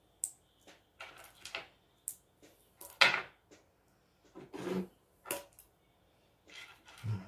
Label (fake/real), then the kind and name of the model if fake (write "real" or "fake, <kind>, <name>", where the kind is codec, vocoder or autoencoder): real